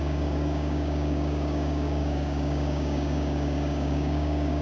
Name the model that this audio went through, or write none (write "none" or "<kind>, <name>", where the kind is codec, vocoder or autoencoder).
codec, DAC